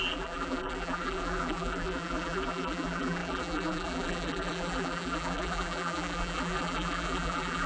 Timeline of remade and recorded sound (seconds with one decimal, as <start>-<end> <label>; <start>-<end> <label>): 0.0-7.7 remade